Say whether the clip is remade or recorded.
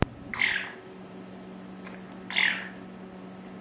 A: recorded